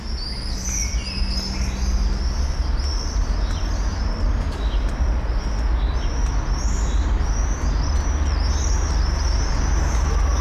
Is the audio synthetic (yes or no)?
no